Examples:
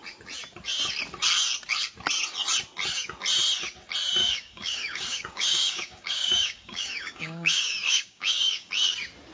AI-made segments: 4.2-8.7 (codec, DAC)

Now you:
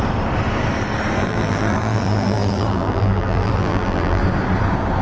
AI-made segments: 1.2-4.2 (vocoder, BigVGAN v2)

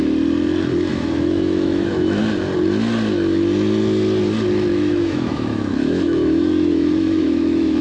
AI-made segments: 0.9-2.2 (autoencoder, DAC-VAE); 4.7-7.8

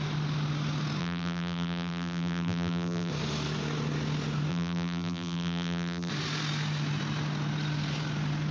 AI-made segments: 1.0-3.1 (vocoder, BigVGAN v2); 4.5-6.1

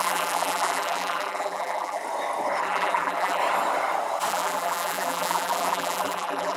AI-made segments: 0.0-2.0 (vocoder, BigVGAN v2); 2.6-3.4; 4.3-6.6

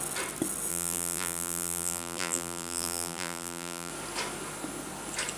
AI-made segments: 0.7-3.9 (vocoder, BigVGAN v2)

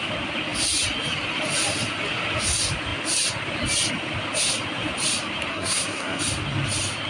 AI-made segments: 5.5-6.2 (codec, SNAC)

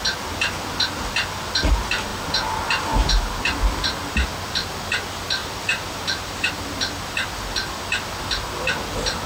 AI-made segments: 5.4-6.5 (vocoder, BigVGAN v2)